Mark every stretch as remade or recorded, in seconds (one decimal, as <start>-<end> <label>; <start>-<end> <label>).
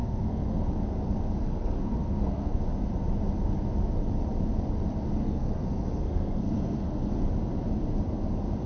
0.0-0.7 remade; 0.7-1.3 recorded; 1.3-2.6 remade; 2.6-5.2 recorded; 5.2-7.1 remade; 7.1-8.7 recorded